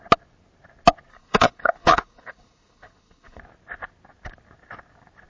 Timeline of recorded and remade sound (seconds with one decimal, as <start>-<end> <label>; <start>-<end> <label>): 0.0-1.1 recorded; 1.1-3.4 remade; 3.4-5.3 recorded